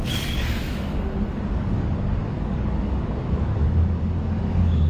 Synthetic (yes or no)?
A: yes